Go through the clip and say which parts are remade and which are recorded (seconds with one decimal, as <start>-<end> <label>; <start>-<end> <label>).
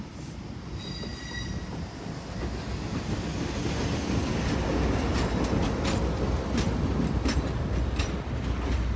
0.0-9.0 recorded